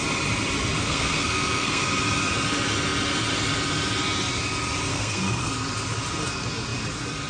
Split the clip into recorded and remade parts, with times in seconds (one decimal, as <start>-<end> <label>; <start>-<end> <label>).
0.0-0.8 recorded; 0.8-1.8 remade; 1.8-4.9 recorded; 4.9-5.5 remade; 5.5-7.3 recorded